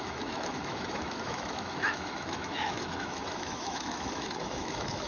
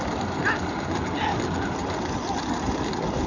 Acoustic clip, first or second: second